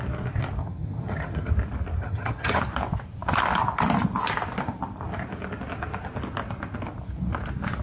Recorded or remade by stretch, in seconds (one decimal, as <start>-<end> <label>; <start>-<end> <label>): 0.0-0.6 recorded; 0.6-1.5 remade; 1.5-2.0 recorded; 2.0-2.6 remade; 2.6-7.8 recorded